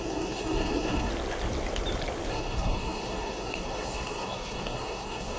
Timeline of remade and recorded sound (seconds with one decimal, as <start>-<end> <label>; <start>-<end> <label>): 0.0-1.1 remade; 1.1-2.3 recorded; 2.3-5.4 remade

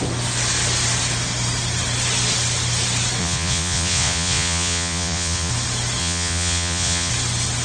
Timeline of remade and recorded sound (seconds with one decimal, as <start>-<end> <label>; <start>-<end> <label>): 0.0-3.2 recorded; 3.2-5.5 remade; 5.5-6.0 recorded; 6.0-7.1 remade; 7.1-7.6 recorded

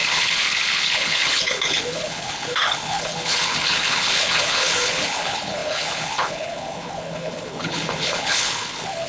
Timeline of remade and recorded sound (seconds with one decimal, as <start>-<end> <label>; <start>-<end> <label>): 0.0-9.1 remade

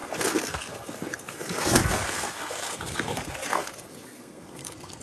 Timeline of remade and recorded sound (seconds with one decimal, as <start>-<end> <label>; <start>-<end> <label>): 0.0-5.0 remade

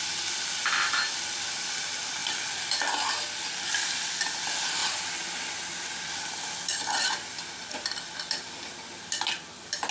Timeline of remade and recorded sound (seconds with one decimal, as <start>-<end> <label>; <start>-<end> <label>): 0.0-2.2 recorded; 2.2-2.9 remade; 2.9-4.8 recorded; 4.8-9.3 remade; 9.3-9.9 recorded

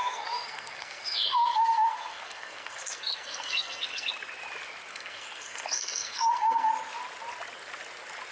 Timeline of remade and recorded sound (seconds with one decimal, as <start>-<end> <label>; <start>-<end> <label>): 0.0-4.1 remade; 4.1-4.9 recorded; 4.9-6.7 remade; 6.7-8.3 recorded

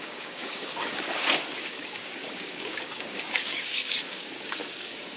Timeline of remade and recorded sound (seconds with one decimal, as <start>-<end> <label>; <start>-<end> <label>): 0.0-5.2 remade

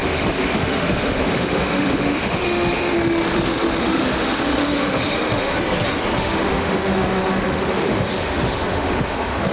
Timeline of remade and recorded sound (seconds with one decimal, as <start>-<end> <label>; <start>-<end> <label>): 0.0-5.5 remade; 5.5-6.2 recorded; 6.2-9.5 remade